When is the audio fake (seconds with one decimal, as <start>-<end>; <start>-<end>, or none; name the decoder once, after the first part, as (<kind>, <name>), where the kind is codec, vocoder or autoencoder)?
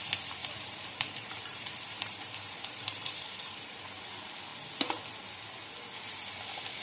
0.4-4.0 (vocoder, BigVGAN v2)